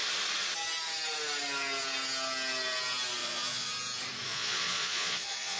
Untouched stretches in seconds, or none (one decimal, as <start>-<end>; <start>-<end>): 0.0-3.2; 3.7-4.3